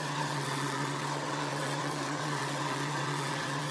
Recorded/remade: remade